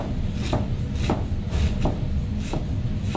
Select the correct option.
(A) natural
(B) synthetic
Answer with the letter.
A